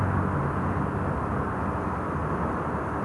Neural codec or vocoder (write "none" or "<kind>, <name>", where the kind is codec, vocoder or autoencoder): none